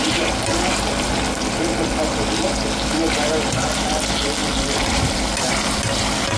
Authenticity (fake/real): real